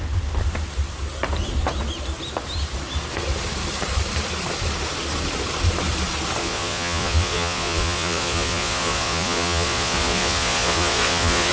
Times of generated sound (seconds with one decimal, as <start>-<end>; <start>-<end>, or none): 6.4-11.5